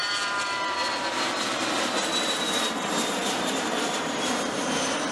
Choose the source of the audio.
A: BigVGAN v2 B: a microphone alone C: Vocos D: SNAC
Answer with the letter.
A